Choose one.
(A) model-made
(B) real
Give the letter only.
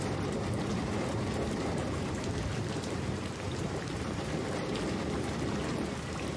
A